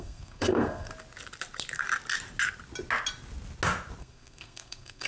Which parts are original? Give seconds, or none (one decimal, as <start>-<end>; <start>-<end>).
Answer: 0.9-4.0